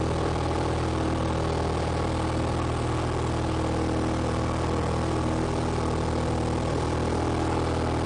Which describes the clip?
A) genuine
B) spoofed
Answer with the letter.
A